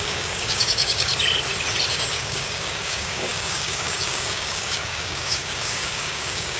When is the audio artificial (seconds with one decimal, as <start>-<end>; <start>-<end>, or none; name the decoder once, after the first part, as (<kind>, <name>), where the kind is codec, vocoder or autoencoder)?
0.0-1.1 (codec, DAC); 1.9-6.6